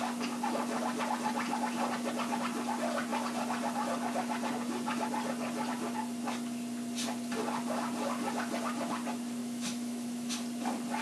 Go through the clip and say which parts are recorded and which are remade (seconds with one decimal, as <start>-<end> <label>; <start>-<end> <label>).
0.0-9.4 recorded; 9.4-10.3 remade; 10.3-11.0 recorded